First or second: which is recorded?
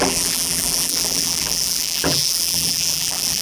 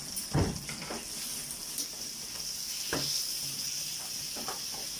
second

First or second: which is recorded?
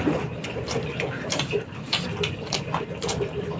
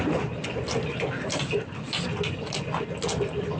second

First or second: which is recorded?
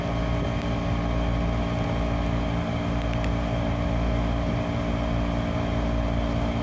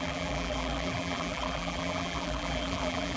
first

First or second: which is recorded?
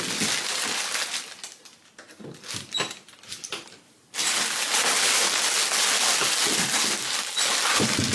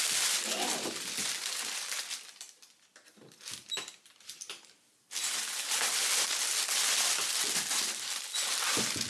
first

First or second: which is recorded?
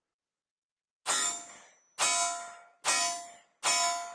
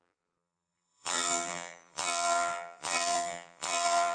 first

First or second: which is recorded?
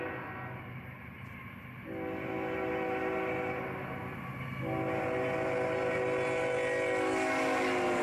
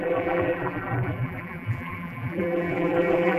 first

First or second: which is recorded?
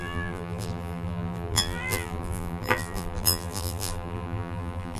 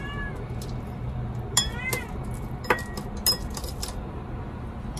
second